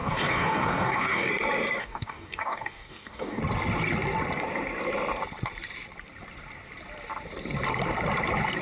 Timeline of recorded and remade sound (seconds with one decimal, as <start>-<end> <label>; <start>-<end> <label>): 0.0-1.3 remade; 1.3-1.8 recorded; 1.8-3.4 remade; 3.4-8.6 recorded